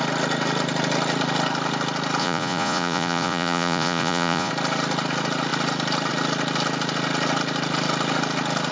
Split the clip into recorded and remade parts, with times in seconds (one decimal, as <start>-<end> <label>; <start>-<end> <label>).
0.0-2.2 recorded; 2.2-4.5 remade; 4.5-8.7 recorded